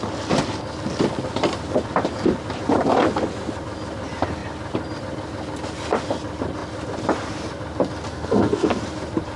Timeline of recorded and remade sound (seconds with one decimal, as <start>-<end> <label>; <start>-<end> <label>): 0.0-8.1 recorded; 8.1-8.8 remade; 8.8-9.4 recorded

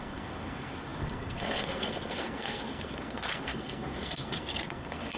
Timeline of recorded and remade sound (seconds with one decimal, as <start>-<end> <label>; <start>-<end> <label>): 0.0-5.2 remade

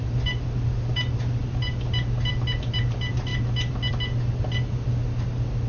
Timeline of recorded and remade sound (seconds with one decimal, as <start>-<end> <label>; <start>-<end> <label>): 0.0-5.7 recorded

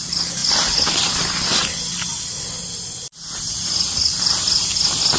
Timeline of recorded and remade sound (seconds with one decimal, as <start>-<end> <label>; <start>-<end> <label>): 0.0-5.2 recorded